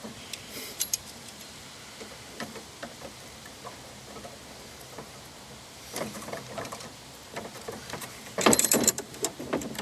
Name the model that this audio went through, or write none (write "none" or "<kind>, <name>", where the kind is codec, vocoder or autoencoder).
vocoder, BigVGAN v2